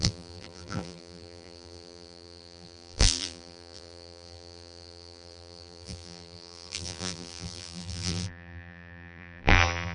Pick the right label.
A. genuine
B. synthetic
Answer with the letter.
B